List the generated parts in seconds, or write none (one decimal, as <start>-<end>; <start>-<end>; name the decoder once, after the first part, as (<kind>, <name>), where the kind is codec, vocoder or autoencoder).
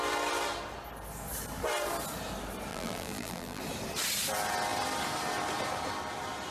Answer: 2.7-3.6 (vocoder, BigVGAN v2)